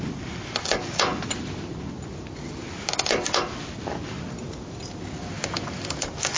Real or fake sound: real